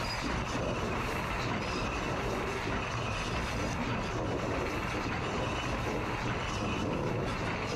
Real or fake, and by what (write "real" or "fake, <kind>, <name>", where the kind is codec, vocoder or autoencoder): real